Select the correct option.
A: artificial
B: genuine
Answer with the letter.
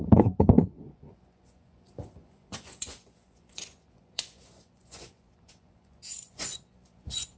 A